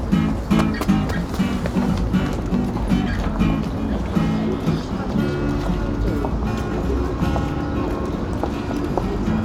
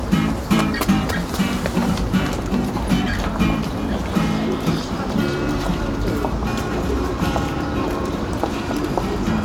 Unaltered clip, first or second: first